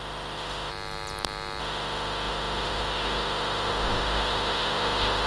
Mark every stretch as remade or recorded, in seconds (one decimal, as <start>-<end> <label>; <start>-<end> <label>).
0.0-0.7 remade; 0.7-1.6 recorded; 1.6-5.3 remade